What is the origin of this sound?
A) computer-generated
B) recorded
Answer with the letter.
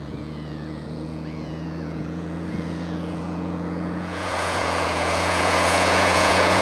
A